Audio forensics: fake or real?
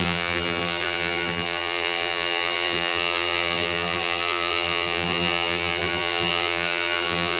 fake